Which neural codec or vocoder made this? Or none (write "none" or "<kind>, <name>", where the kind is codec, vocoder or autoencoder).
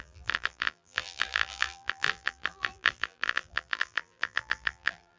vocoder, BigVGAN v2